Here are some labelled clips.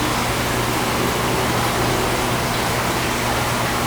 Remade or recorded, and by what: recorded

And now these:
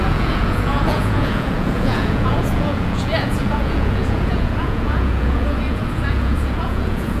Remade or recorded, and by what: remade, vocoder, Vocos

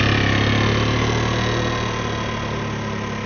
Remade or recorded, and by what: recorded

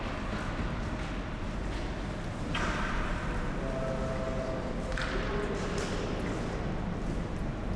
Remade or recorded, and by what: recorded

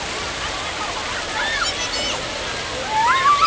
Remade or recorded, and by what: recorded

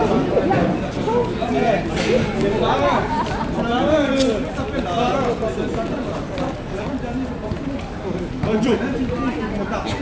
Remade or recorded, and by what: recorded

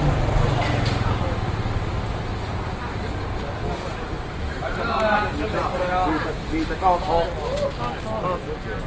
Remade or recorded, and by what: recorded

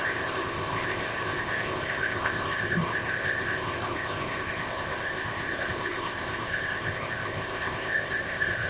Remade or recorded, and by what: remade, codec, ZipCodec